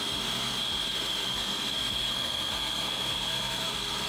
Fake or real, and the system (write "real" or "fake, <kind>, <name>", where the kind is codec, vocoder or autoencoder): fake, codec, SNAC